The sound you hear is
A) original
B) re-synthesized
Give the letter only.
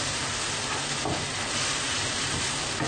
A